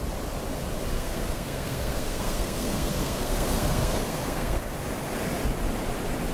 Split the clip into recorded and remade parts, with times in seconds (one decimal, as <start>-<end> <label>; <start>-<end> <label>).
0.0-0.9 recorded; 0.9-4.7 remade; 4.7-6.3 recorded